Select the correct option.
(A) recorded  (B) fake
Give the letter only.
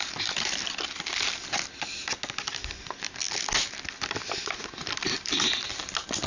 A